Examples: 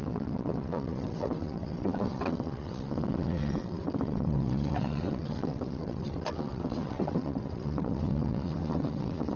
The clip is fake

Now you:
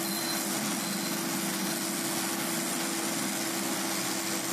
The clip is real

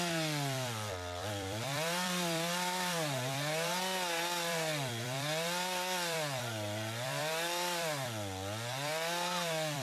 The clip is fake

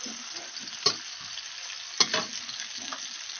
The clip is real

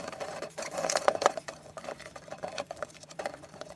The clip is fake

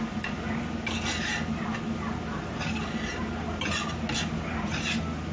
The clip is real